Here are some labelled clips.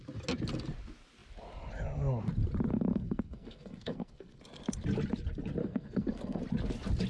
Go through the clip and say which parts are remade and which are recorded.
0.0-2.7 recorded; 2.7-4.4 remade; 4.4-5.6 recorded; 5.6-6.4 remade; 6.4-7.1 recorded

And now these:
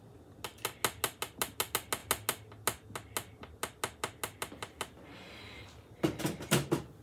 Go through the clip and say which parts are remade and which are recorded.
0.0-7.0 recorded

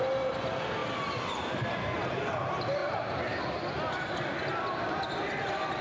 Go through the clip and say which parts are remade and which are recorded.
0.0-5.8 recorded

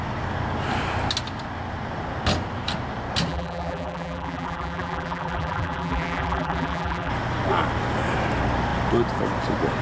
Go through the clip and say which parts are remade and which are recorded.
0.0-3.3 recorded; 3.3-7.1 remade; 7.1-9.8 recorded

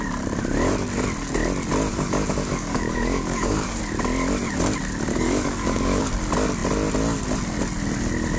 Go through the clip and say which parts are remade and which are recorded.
0.0-1.9 recorded; 1.9-3.8 remade; 3.8-5.1 recorded; 5.1-6.0 remade; 6.0-8.4 recorded

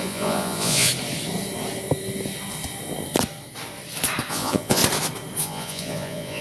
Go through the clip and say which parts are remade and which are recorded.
0.0-0.9 remade; 0.9-4.3 recorded; 4.3-4.8 remade; 4.8-5.4 recorded; 5.4-6.4 remade

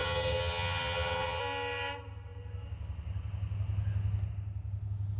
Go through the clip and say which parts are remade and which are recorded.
0.0-1.4 remade; 1.4-5.2 recorded

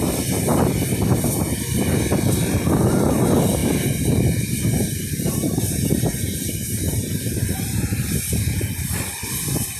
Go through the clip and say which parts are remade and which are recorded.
0.0-3.6 recorded; 3.6-8.2 remade; 8.2-9.8 recorded